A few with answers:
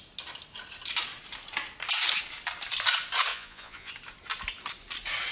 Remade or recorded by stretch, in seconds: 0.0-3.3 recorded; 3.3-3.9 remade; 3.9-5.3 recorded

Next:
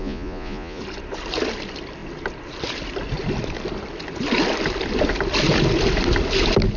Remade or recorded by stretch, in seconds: 0.0-0.8 remade; 0.8-6.8 recorded

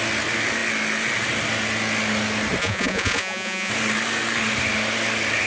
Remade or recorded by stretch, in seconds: 0.0-2.6 recorded; 2.6-3.7 remade; 3.7-5.5 recorded

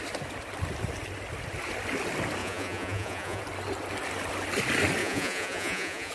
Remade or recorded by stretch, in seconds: 0.0-2.4 recorded; 2.4-3.4 remade; 3.4-5.0 recorded; 5.0-6.1 remade

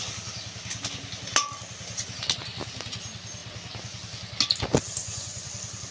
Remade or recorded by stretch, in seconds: 0.0-5.0 recorded; 5.0-5.5 remade; 5.5-5.9 recorded

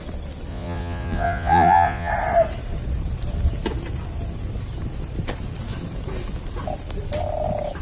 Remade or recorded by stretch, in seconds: 0.0-0.5 recorded; 0.5-2.1 remade; 2.1-7.8 recorded

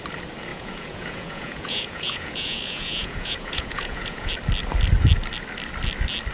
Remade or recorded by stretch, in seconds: 0.0-0.5 recorded; 0.5-4.3 remade; 4.3-6.3 recorded

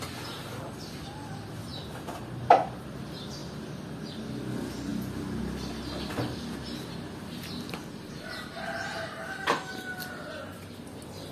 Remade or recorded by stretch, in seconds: 0.0-11.3 recorded